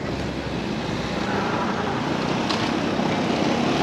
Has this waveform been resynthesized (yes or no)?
no